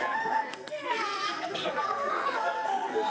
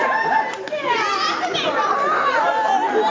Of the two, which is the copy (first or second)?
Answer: first